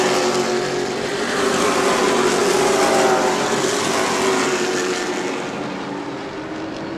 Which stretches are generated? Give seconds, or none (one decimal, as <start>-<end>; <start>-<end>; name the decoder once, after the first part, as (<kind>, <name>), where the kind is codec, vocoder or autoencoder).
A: 1.1-2.0 (vocoder, BigVGAN v2)